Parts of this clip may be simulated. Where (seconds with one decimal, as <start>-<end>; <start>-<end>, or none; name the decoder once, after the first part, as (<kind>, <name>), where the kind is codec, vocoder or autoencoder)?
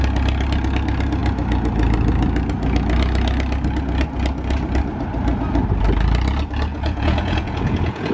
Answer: 6.7-8.1 (vocoder, Vocos)